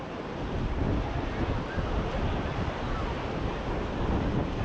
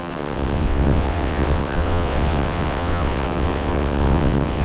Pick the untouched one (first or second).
first